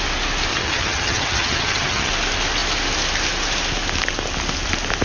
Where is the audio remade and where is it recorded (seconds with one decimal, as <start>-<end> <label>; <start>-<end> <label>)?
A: 0.0-0.5 recorded; 0.5-2.1 remade; 2.1-5.0 recorded